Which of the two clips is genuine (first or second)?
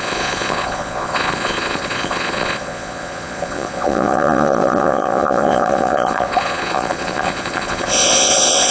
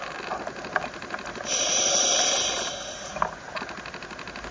second